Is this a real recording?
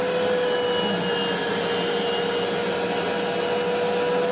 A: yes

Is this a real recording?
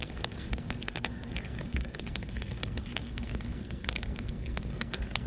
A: no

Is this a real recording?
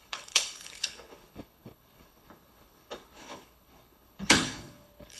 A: no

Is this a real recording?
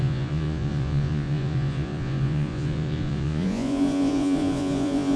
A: no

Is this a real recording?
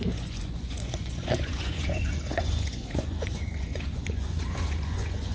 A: no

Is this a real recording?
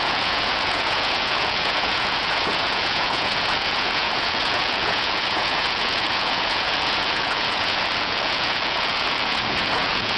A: no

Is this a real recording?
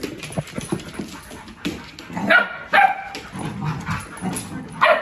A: yes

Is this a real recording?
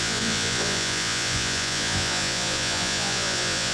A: no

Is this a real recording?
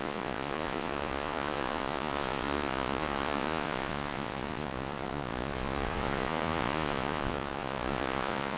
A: no